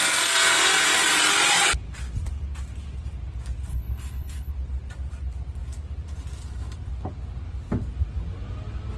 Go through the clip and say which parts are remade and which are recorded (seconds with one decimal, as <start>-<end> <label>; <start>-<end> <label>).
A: 0.0-3.7 recorded; 3.7-4.5 remade; 4.5-9.0 recorded